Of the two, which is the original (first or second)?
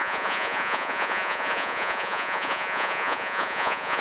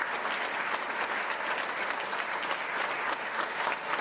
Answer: second